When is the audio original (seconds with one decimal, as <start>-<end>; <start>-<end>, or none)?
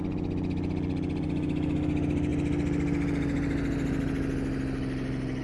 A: 0.0-5.4